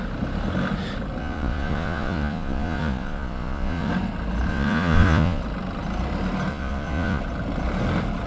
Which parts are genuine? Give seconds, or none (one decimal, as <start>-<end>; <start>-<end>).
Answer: 0.0-1.2; 3.9-4.5; 5.4-6.5; 7.2-8.3